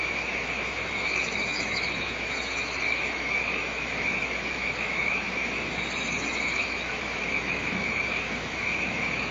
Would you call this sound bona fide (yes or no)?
no